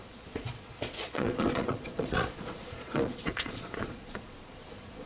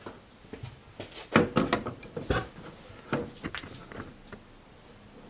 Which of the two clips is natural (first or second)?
second